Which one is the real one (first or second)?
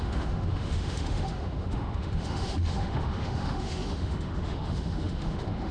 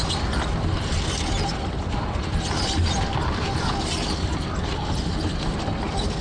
second